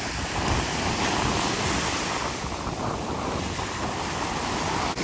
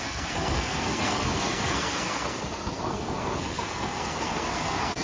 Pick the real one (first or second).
first